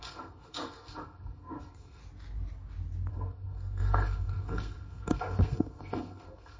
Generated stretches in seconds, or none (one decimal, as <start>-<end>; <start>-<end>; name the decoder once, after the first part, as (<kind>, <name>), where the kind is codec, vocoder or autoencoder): 0.0-2.0 (codec, SNAC); 3.1-6.6